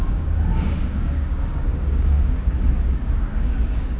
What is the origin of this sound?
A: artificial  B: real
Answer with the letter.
A